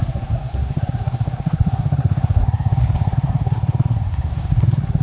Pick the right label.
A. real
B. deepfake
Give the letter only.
B